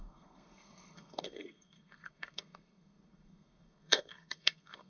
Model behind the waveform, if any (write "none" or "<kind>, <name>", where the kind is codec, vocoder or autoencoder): codec, SNAC